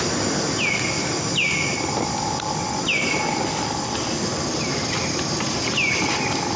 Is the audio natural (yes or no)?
yes